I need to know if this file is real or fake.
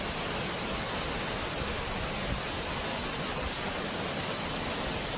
real